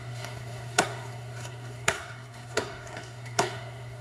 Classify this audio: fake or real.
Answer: fake